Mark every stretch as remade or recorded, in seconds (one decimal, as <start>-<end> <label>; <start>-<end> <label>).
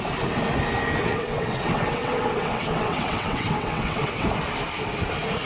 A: 0.0-1.0 recorded; 1.0-4.3 remade; 4.3-5.5 recorded